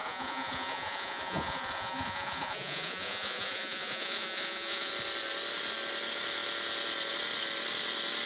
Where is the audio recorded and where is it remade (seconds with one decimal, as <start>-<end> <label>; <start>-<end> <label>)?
0.0-4.9 remade; 4.9-8.3 recorded